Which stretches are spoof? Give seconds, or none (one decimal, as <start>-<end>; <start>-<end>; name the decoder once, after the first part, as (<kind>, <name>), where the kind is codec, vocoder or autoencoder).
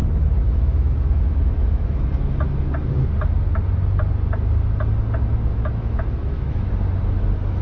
0.0-2.0 (autoencoder, DAC-VAE); 5.5-6.7